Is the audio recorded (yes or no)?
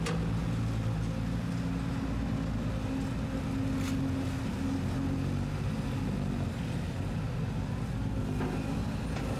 yes